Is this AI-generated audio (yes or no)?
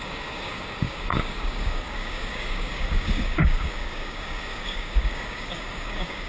yes